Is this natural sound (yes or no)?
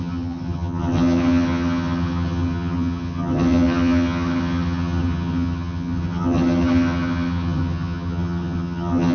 no